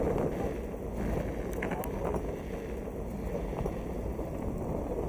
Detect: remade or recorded recorded